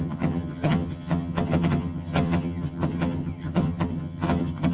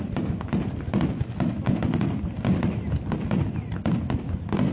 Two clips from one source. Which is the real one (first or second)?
second